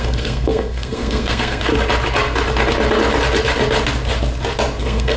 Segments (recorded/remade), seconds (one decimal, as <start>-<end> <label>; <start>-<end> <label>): 0.0-1.7 remade; 1.7-4.8 recorded; 4.8-5.2 remade